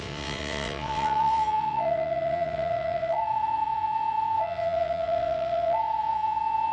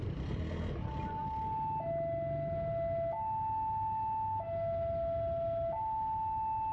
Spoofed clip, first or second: first